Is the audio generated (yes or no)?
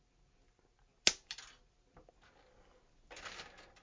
no